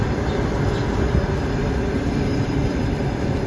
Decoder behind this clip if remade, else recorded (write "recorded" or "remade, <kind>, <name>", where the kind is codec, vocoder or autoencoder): remade, vocoder, BigVGAN v2